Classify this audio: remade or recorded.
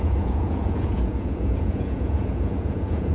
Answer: remade